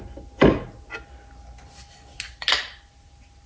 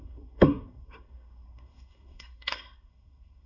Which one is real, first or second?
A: first